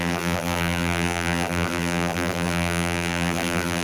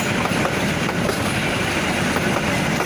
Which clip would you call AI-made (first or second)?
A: first